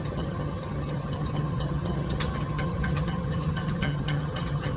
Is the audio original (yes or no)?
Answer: no